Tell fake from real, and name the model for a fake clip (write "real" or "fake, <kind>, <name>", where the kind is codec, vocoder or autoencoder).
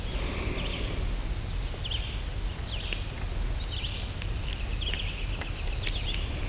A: real